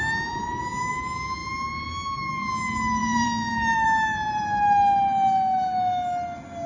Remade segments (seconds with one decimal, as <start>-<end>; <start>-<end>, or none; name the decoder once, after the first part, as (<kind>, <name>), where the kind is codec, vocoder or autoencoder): 3.0-4.4 (vocoder, BigVGAN v2)